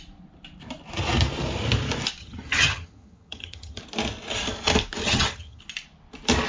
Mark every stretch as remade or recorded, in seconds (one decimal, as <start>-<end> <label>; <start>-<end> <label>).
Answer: 0.0-2.2 recorded; 2.2-3.8 remade; 3.8-5.0 recorded; 5.0-5.6 remade; 5.6-6.5 recorded